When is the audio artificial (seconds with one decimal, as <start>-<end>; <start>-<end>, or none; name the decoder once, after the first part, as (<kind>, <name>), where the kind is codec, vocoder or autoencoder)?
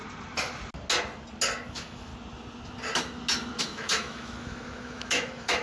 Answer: 1.7-2.1 (autoencoder, DAC-VAE); 3.6-5.6